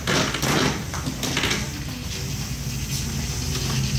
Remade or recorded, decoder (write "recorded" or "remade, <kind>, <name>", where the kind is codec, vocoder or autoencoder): recorded